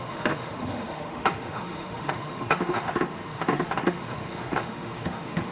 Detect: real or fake fake